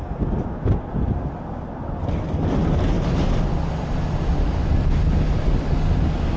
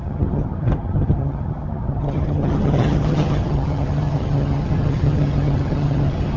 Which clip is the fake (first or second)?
second